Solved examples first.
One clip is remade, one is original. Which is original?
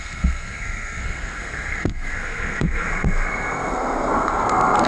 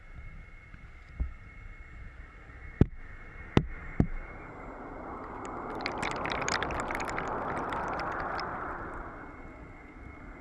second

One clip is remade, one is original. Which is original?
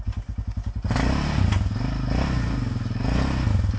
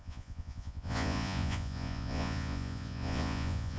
first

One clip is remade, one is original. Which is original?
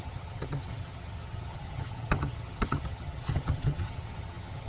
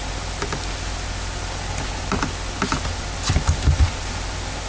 second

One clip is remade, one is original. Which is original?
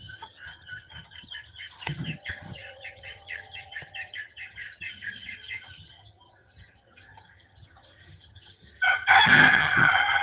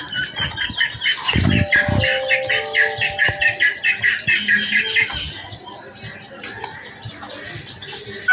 second